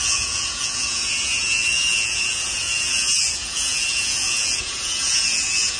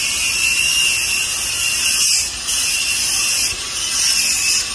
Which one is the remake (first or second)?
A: first